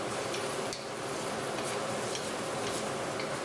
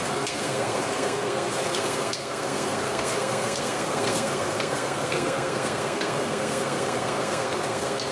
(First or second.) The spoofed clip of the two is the second